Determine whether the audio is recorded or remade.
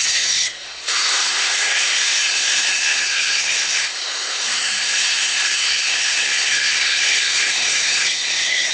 remade